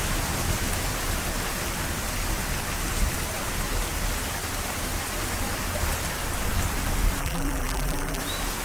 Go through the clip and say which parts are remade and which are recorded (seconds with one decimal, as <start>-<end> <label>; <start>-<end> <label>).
0.0-7.2 recorded; 7.2-8.2 remade; 8.2-8.6 recorded